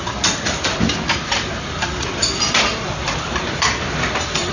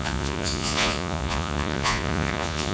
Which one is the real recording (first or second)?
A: first